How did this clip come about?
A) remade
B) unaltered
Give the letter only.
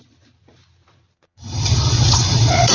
A